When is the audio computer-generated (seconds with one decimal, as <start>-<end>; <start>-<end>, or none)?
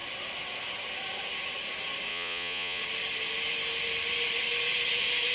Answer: 2.1-2.8